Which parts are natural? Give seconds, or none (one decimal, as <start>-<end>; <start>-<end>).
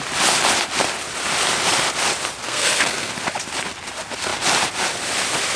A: 0.0-2.4; 3.1-5.6